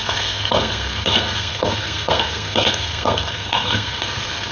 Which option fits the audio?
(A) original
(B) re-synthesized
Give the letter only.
B